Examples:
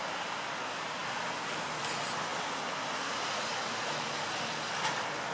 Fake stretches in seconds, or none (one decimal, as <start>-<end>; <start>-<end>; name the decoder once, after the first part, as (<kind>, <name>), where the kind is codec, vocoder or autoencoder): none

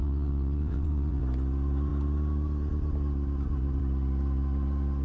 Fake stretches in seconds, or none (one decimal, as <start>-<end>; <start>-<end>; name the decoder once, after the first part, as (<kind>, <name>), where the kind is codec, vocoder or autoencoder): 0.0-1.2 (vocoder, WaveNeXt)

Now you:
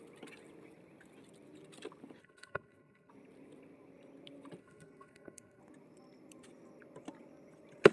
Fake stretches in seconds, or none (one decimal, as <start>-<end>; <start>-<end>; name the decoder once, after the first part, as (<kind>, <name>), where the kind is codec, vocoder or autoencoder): 2.2-3.1 (codec, SNAC); 4.6-5.6

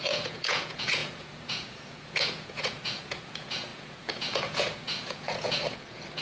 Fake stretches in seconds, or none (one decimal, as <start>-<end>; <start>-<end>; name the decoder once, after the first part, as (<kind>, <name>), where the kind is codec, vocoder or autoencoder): 0.0-6.2 (vocoder, Vocos)

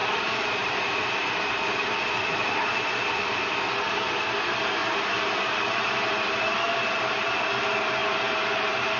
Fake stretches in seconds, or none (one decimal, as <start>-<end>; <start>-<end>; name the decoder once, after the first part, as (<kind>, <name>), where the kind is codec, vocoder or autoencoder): 0.0-1.9 (vocoder, BigVGAN v2); 4.8-5.6; 8.0-9.0